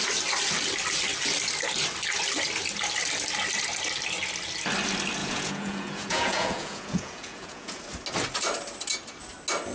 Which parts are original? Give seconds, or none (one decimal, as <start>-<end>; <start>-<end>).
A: 0.0-5.2; 7.8-9.7